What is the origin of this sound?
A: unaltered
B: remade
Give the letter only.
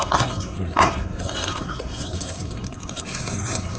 B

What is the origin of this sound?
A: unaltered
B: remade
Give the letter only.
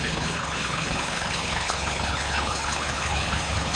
B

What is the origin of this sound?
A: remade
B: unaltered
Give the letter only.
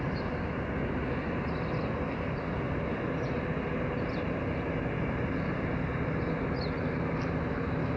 B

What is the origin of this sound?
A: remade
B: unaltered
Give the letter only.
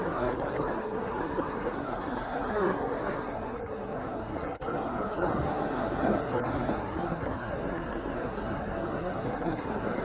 A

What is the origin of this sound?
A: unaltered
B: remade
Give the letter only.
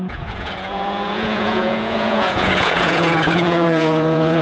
B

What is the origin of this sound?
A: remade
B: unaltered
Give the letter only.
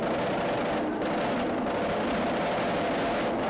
B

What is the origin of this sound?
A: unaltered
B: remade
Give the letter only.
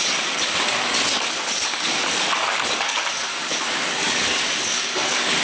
B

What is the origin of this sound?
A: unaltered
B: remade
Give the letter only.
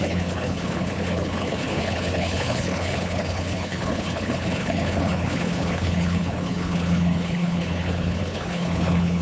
B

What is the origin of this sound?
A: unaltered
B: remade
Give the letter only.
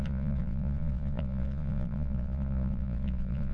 B